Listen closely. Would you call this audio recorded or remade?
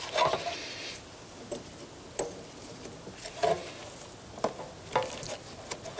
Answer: recorded